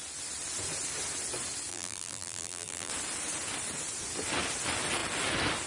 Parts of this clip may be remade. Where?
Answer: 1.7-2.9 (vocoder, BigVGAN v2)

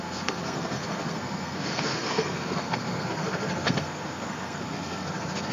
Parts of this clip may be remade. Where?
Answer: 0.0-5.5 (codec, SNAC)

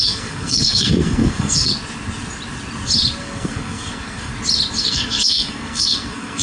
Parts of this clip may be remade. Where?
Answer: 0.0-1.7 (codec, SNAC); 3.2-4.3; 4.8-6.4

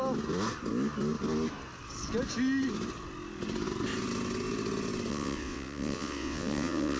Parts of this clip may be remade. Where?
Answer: 5.1-7.0 (vocoder, WaveNeXt)

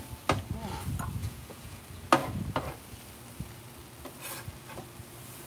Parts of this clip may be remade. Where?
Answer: 1.2-1.8 (vocoder, Vocos)